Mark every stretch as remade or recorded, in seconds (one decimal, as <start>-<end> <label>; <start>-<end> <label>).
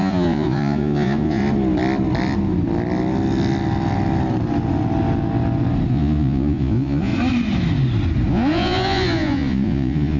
0.0-1.4 remade; 1.4-5.9 recorded; 5.9-7.1 remade; 7.1-8.3 recorded; 8.3-10.2 remade